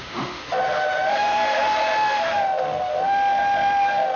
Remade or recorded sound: remade